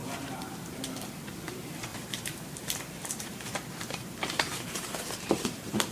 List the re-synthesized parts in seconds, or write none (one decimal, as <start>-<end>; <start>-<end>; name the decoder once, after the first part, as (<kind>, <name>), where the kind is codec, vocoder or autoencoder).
1.5-5.9 (vocoder, BigVGAN v2)